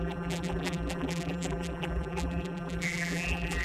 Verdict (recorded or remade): remade